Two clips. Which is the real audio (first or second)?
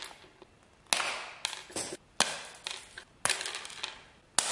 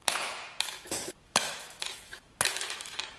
first